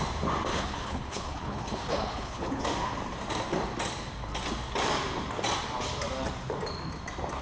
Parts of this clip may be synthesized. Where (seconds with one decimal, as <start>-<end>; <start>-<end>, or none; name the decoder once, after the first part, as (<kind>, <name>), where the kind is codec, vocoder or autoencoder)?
0.5-2.6 (codec, HILCodec)